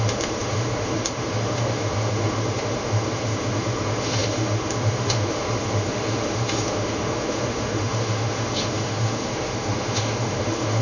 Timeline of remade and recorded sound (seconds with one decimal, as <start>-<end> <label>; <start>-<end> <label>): 0.0-10.8 remade